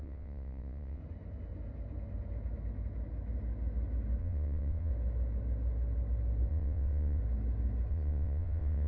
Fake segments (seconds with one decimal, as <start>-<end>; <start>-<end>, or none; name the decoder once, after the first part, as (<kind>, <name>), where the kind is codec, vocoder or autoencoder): 0.0-1.0 (vocoder, WaveNeXt); 4.2-4.9; 6.5-7.2; 7.9-8.9